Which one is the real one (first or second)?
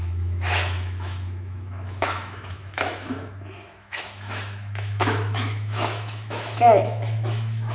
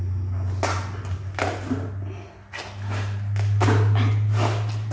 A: second